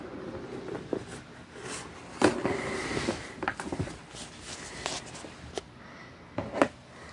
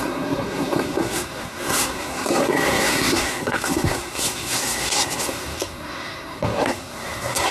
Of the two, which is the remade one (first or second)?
second